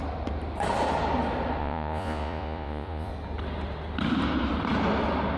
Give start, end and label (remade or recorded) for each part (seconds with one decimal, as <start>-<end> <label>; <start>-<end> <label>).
0.0-1.6 recorded; 1.6-3.1 remade; 3.1-5.4 recorded

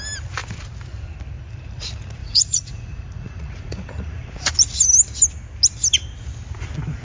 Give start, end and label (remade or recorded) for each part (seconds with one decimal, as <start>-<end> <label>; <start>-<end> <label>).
0.0-2.2 recorded; 2.2-4.5 remade; 4.5-7.0 recorded

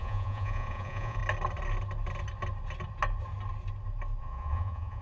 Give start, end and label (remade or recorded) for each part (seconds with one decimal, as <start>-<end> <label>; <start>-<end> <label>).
0.0-1.2 remade; 1.2-4.2 recorded; 4.2-5.0 remade

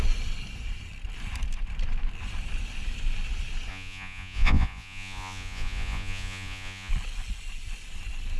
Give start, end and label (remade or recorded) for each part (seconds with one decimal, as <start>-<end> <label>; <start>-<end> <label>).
0.0-3.7 recorded; 3.7-6.9 remade; 6.9-8.4 recorded